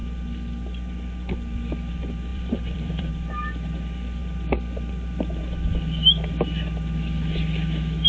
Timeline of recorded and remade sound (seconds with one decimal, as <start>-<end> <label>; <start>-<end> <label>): 0.0-2.3 recorded; 2.3-3.1 remade; 3.1-8.1 recorded